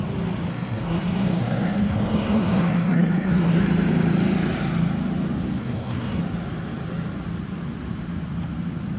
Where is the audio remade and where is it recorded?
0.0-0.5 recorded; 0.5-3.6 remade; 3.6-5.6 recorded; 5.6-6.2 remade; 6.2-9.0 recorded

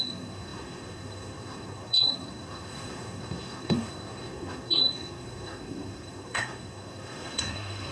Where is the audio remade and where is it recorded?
0.0-7.9 remade

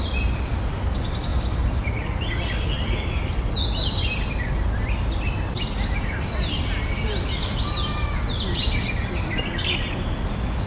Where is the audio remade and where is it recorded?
0.0-10.7 recorded

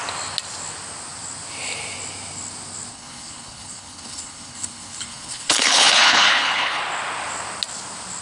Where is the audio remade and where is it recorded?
0.0-2.9 recorded; 2.9-6.8 remade; 6.8-8.2 recorded

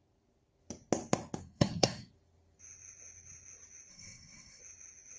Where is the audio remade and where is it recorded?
0.0-1.4 recorded; 1.4-2.1 remade; 2.1-3.9 recorded; 3.9-4.6 remade; 4.6-5.2 recorded

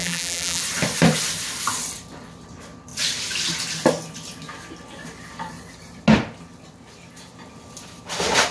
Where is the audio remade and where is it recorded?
0.0-0.6 remade; 0.6-8.5 recorded

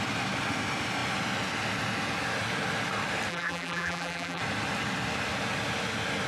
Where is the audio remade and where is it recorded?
0.0-3.3 recorded; 3.3-4.4 remade; 4.4-6.3 recorded